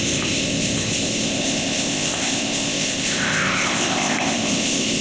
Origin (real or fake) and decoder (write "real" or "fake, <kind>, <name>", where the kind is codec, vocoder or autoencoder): fake, codec, ZipCodec